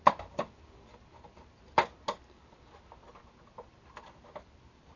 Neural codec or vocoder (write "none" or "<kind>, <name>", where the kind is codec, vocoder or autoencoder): none